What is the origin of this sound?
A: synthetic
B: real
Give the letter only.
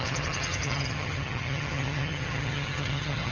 A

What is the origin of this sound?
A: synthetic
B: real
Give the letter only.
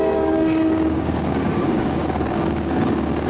A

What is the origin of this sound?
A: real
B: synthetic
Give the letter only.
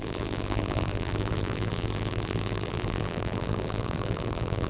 B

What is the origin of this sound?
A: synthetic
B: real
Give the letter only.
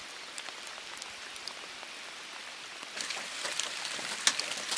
B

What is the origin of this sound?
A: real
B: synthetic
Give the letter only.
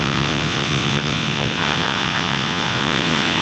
B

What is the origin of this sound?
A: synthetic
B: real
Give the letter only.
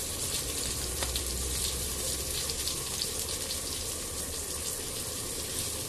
A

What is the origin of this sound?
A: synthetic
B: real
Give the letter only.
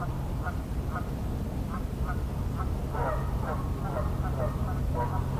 B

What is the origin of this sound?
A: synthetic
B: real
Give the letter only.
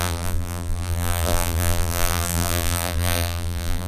A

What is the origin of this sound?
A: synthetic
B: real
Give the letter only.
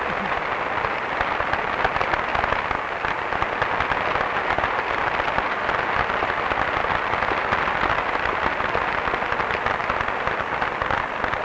B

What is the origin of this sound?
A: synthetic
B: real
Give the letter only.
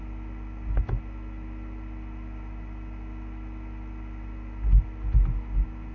B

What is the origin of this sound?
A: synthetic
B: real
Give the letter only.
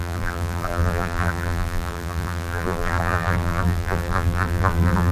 A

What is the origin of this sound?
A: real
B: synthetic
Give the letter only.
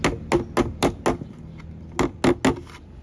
A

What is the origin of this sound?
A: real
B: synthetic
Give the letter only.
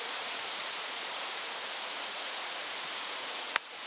B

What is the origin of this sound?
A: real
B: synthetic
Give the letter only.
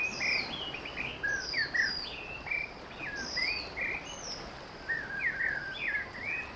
A